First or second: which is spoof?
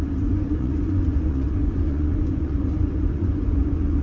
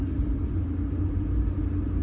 first